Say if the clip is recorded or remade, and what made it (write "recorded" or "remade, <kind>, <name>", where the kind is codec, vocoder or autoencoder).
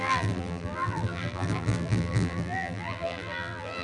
remade, vocoder, BigVGAN v2